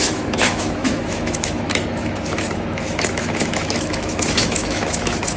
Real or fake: fake